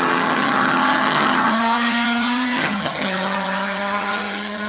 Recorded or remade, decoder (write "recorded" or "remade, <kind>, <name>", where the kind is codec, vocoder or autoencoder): remade, vocoder, HiFi-GAN